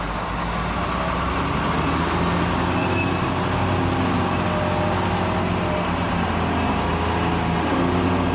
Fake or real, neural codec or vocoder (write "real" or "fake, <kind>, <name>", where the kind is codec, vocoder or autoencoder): real